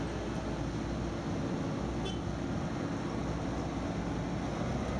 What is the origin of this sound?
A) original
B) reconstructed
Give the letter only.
A